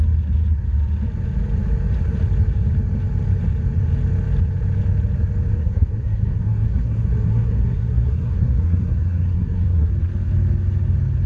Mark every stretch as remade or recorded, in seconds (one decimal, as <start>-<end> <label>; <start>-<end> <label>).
0.0-5.6 recorded; 5.6-9.9 remade; 9.9-11.3 recorded